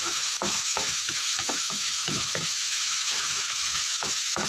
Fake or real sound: fake